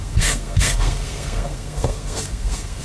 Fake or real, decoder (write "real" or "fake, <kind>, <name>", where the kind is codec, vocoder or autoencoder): fake, codec, SNAC